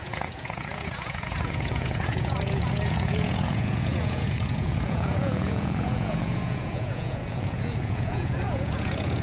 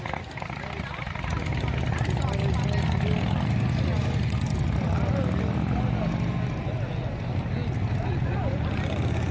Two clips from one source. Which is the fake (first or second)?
first